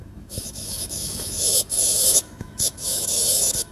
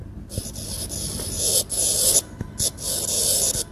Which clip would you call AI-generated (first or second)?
first